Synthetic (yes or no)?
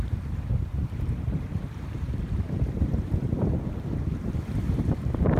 yes